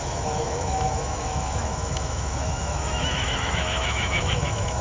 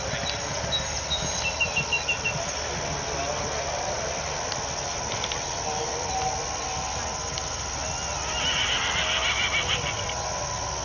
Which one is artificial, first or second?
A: first